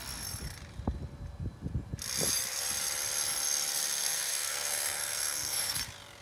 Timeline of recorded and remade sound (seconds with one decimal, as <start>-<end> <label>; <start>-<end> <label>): 0.0-3.9 recorded; 3.9-5.8 remade; 5.8-6.2 recorded